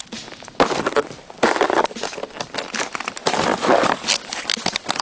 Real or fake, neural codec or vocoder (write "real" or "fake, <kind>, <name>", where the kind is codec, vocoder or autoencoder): real